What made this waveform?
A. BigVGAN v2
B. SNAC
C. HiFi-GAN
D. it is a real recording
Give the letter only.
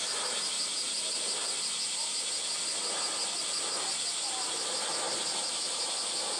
D